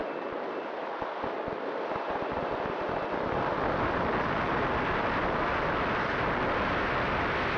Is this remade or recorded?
recorded